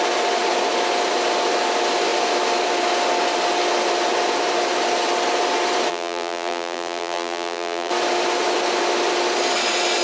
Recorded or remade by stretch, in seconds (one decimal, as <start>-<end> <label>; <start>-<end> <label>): 0.0-5.9 recorded; 5.9-7.9 remade; 7.9-10.0 recorded